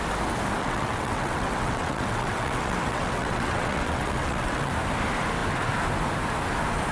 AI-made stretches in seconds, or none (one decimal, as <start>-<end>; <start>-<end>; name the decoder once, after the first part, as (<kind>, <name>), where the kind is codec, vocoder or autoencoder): 0.6-4.7 (vocoder, WaveNeXt)